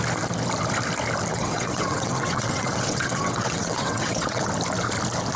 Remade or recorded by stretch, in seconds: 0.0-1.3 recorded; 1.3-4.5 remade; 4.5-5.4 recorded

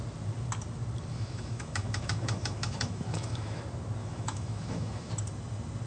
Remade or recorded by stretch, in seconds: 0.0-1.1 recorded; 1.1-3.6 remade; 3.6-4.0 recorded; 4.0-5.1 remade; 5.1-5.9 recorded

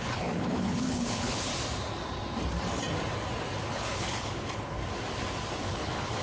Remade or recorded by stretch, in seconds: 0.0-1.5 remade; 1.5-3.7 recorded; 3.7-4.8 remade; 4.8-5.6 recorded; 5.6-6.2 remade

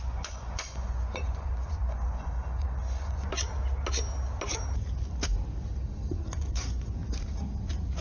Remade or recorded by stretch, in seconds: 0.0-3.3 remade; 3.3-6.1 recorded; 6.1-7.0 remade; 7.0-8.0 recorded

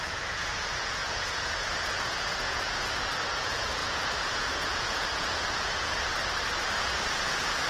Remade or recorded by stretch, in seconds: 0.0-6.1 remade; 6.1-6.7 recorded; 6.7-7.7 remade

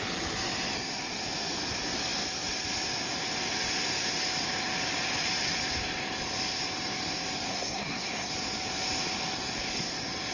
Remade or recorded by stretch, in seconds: 0.0-7.5 recorded; 7.5-8.3 remade; 8.3-10.3 recorded